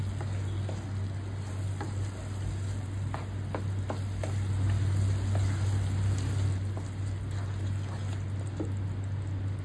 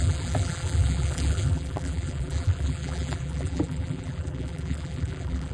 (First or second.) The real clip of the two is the first